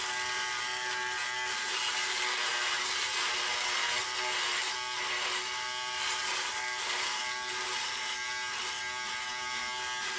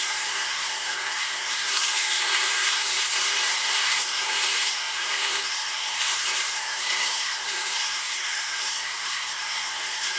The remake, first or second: second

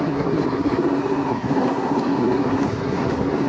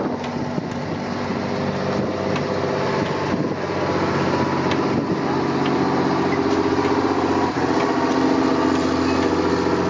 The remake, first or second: first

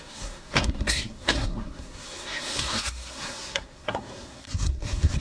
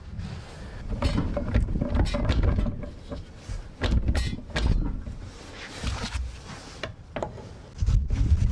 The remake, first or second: first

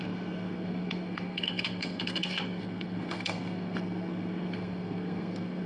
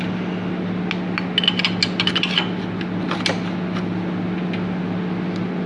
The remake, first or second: first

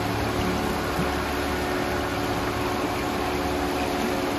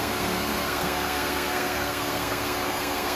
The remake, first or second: second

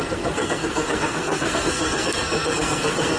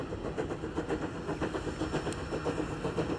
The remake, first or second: first